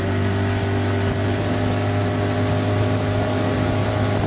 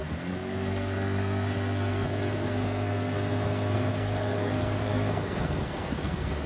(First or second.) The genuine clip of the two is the first